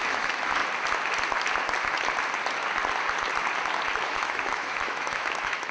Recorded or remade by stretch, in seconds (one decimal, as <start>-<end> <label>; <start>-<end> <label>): 0.0-0.6 remade; 0.6-4.0 recorded; 4.0-5.7 remade